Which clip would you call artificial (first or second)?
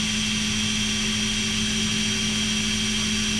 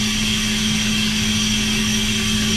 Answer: second